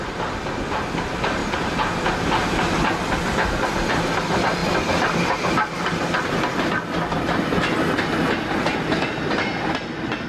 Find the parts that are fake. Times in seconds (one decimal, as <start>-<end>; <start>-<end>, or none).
none